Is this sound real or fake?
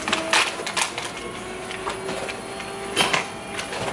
real